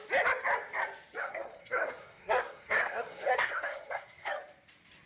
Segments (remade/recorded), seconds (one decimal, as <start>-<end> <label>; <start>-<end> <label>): 0.0-1.2 recorded; 1.2-4.3 remade; 4.3-5.1 recorded